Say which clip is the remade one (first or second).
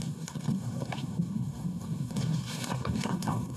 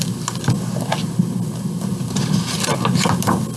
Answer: first